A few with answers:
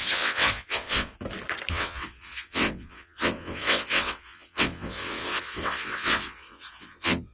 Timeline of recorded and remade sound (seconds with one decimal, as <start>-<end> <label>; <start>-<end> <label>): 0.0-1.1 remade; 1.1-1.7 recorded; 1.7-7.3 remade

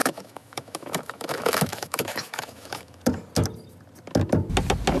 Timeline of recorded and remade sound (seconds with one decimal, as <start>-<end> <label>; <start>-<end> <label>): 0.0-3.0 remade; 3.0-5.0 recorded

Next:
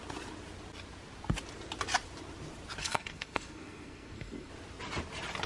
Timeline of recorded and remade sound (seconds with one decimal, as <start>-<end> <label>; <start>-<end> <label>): 0.0-2.8 recorded; 2.8-4.5 remade; 4.5-5.5 recorded

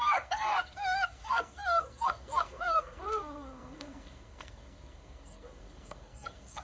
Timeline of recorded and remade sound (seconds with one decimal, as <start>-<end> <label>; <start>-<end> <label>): 0.0-6.6 remade

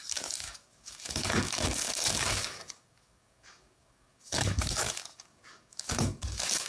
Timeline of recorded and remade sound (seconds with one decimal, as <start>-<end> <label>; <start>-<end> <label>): 0.0-6.7 remade

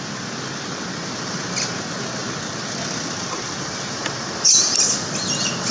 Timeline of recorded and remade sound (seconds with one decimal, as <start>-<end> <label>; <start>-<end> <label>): 0.0-5.7 recorded

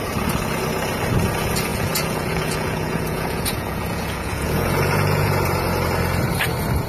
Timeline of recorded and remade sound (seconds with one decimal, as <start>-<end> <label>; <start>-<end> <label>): 0.0-1.7 recorded; 1.7-5.3 remade; 5.3-6.9 recorded